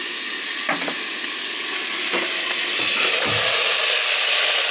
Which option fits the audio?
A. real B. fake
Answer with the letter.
A